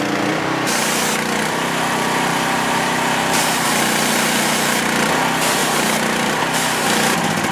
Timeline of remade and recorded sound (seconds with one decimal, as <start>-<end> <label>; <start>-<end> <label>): 0.0-2.3 recorded; 2.3-5.1 remade; 5.1-5.6 recorded; 5.6-6.4 remade; 6.4-7.5 recorded